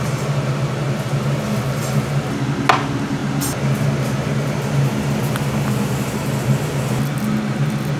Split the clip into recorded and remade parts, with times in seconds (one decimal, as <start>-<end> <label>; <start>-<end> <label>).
0.0-8.0 recorded